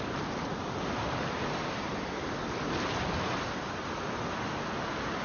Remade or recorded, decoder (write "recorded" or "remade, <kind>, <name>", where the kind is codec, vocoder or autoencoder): recorded